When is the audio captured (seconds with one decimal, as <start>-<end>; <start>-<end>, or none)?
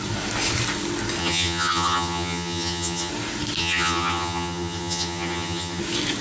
0.0-1.2; 3.1-3.6; 5.8-6.2